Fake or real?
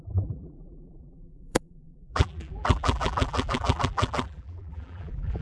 fake